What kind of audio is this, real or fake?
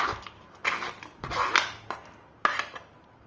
real